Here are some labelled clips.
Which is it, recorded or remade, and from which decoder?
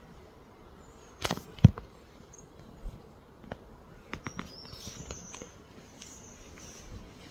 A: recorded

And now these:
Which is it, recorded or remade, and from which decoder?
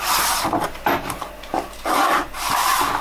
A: recorded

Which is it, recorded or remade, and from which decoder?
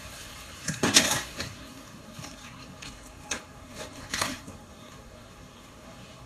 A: remade, codec, SNAC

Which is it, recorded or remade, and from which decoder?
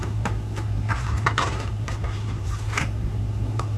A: remade, codec, SNAC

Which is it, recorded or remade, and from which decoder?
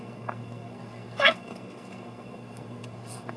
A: remade, codec, SNAC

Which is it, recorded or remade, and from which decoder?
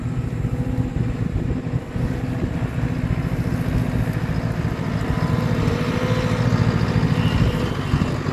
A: recorded